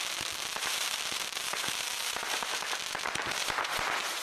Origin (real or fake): fake